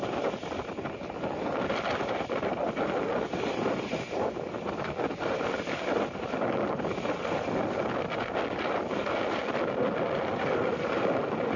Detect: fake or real real